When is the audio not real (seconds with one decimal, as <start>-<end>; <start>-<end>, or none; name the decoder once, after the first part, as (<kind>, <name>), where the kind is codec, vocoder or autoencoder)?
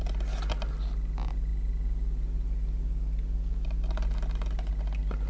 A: none